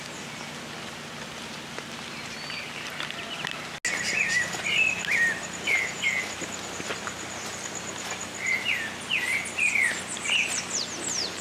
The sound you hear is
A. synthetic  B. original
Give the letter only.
B